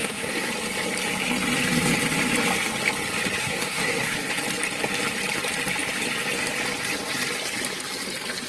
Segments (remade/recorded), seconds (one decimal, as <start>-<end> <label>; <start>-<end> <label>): 0.0-0.5 remade; 0.5-3.4 recorded; 3.4-4.3 remade; 4.3-8.5 recorded